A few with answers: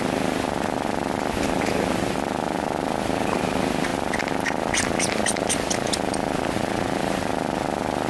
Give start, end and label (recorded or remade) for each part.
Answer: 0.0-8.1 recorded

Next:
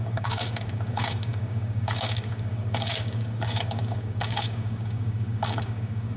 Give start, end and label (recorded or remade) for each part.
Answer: 0.0-6.2 remade

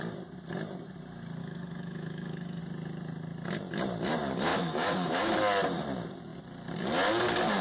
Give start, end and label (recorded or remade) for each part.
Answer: 0.0-1.4 recorded; 1.4-2.6 remade; 2.6-4.5 recorded; 4.5-5.3 remade; 5.3-7.6 recorded

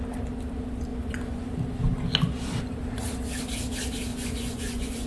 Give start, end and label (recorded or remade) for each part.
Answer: 0.0-0.9 recorded; 0.9-1.4 remade; 1.4-4.1 recorded; 4.1-5.1 remade

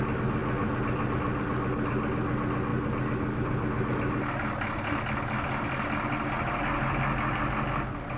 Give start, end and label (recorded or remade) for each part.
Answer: 0.0-8.2 recorded

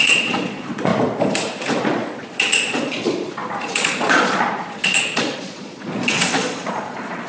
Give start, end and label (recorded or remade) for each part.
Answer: 0.0-0.9 remade; 0.9-1.8 recorded; 1.8-7.3 remade

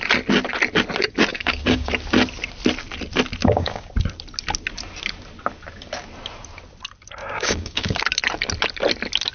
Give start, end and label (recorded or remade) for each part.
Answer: 0.0-1.3 recorded; 1.3-1.9 remade; 1.9-3.4 recorded; 3.4-3.9 remade; 3.9-7.2 recorded; 7.2-8.0 remade; 8.0-9.3 recorded